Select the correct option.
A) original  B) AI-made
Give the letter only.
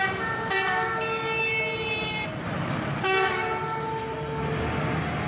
A